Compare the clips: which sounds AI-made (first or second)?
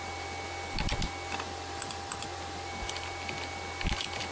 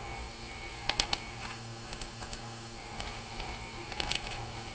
second